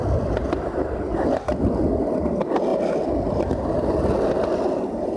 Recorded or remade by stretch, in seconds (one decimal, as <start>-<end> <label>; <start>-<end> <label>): 0.0-5.2 recorded